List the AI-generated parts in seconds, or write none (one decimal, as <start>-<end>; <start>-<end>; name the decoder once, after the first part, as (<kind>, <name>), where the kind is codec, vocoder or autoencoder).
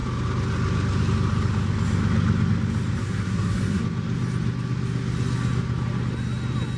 3.0-3.8 (codec, SNAC)